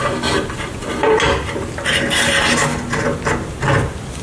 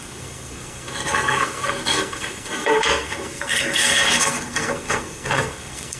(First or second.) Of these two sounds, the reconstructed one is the second